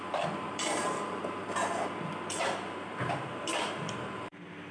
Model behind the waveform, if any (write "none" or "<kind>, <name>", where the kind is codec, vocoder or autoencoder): vocoder, BigVGAN v2